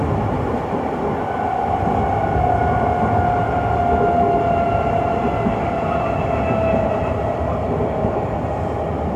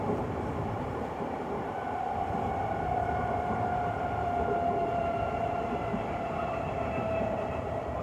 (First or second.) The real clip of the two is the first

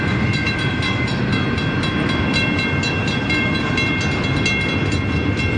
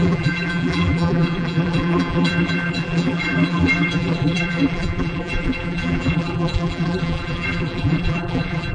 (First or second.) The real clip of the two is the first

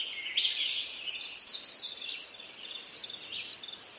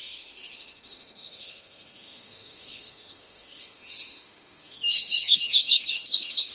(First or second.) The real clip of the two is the first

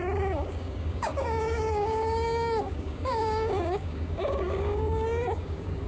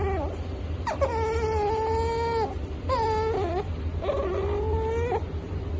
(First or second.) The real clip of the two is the second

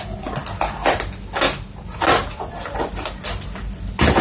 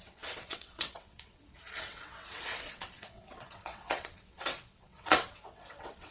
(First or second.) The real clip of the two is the first